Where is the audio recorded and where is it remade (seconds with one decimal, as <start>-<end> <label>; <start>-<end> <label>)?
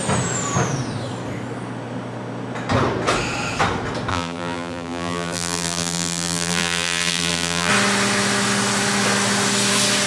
0.0-4.1 recorded; 4.1-7.7 remade; 7.7-10.1 recorded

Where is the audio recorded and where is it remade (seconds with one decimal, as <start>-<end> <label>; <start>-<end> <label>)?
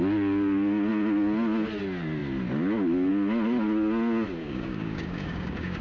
0.0-4.4 recorded; 4.4-5.8 remade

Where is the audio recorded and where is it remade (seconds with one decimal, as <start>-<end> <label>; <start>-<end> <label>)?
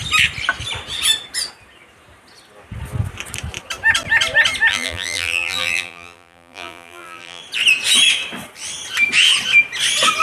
0.0-4.7 recorded; 4.7-7.4 remade; 7.4-10.2 recorded